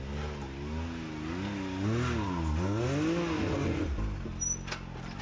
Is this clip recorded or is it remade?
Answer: recorded